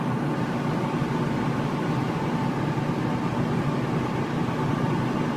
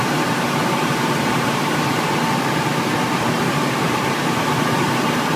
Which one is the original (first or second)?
first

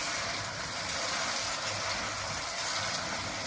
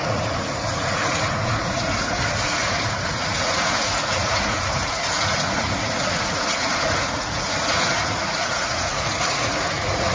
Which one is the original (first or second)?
first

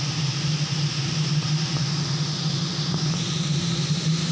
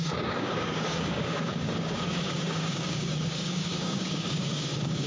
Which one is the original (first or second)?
first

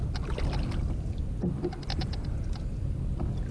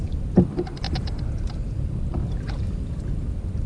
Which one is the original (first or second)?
first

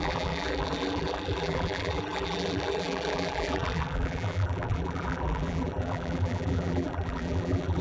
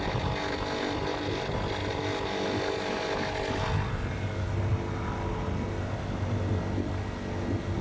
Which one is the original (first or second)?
second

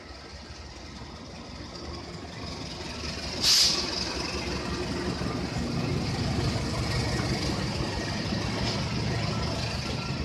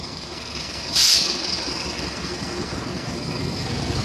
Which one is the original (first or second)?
first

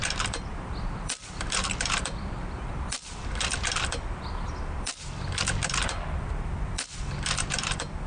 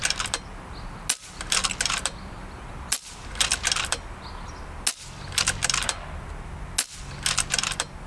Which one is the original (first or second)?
second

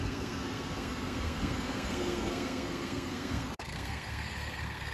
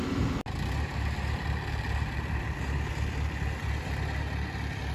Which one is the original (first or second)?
second